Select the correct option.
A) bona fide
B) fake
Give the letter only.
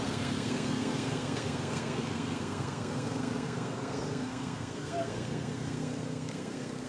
B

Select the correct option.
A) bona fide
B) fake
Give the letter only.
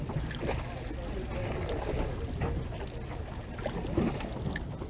A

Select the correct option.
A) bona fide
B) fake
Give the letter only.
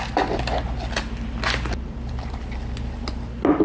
A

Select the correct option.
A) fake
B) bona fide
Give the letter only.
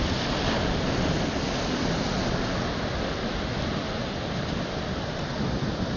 B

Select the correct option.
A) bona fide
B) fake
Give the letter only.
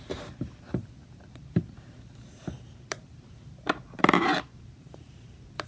B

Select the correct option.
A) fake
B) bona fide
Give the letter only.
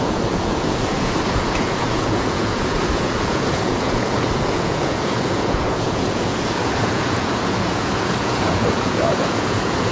A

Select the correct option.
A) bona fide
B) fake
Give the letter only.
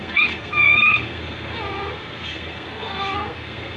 B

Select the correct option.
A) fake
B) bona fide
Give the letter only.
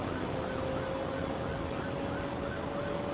B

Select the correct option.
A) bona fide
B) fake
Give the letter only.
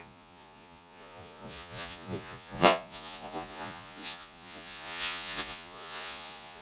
B